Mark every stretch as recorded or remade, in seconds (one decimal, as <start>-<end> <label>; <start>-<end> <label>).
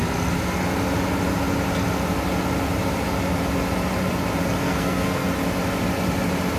0.0-4.6 recorded; 4.6-5.3 remade; 5.3-6.6 recorded